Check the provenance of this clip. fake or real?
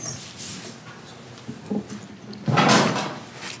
real